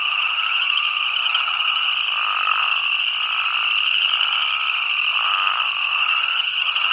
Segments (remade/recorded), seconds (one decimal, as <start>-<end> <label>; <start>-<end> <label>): 0.0-1.9 remade; 1.9-6.0 recorded; 6.0-6.9 remade